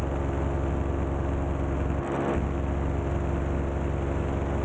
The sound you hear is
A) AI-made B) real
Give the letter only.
B